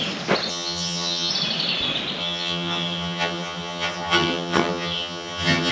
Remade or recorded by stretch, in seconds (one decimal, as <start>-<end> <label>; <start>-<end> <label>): 0.0-0.5 recorded; 0.5-1.3 remade; 1.3-2.2 recorded; 2.2-5.7 remade